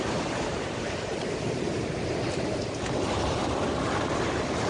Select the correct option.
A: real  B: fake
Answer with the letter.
B